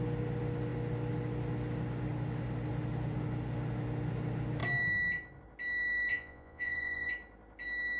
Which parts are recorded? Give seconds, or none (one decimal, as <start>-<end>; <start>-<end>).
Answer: 0.0-6.1; 7.1-8.0